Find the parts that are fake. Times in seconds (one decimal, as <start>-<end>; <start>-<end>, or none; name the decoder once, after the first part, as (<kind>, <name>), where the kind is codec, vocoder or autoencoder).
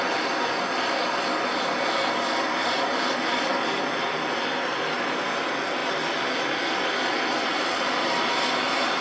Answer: none